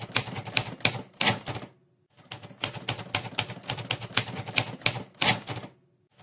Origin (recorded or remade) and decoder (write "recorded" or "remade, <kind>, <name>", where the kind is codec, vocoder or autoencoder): recorded